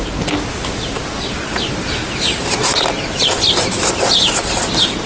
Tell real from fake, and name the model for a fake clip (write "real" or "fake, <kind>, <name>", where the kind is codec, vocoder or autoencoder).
real